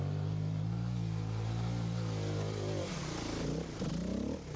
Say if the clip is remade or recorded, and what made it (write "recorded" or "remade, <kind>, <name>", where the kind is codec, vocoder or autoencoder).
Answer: recorded